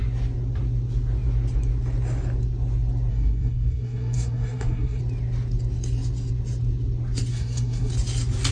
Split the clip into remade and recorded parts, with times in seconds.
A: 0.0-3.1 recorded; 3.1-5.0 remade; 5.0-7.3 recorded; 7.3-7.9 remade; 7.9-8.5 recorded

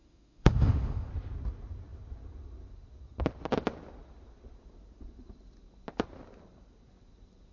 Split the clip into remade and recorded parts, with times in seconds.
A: 0.0-1.1 remade; 1.1-7.5 recorded

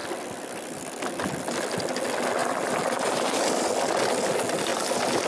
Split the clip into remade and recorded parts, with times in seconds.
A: 0.0-2.4 recorded; 2.4-3.7 remade; 3.7-5.3 recorded

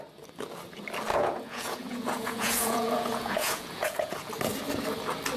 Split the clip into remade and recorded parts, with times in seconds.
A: 0.0-1.1 recorded; 1.1-4.3 remade; 4.3-5.4 recorded

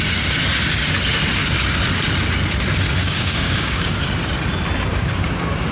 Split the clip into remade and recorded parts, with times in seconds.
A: 0.0-3.0 recorded; 3.0-4.0 remade; 4.0-4.9 recorded; 4.9-5.7 remade

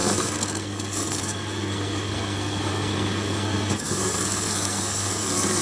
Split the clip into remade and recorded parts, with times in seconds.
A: 0.0-5.6 remade